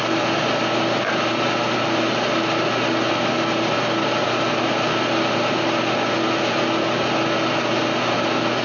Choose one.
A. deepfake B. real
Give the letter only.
B